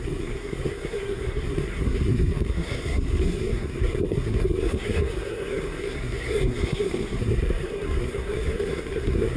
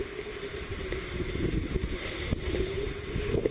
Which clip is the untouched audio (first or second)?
second